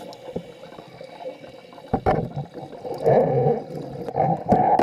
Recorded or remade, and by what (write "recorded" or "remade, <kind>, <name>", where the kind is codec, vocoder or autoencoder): recorded